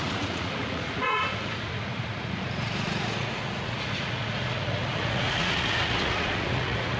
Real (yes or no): no